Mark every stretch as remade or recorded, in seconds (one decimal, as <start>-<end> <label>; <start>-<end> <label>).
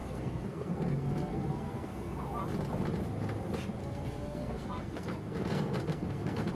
0.0-2.4 remade; 2.4-3.8 recorded; 3.8-6.5 remade